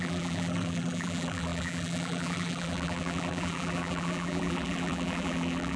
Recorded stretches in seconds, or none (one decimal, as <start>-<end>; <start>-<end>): none